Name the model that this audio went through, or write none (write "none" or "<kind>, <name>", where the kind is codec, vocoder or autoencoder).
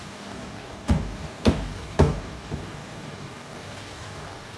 codec, DAC